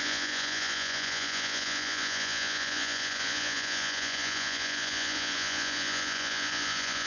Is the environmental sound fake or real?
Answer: fake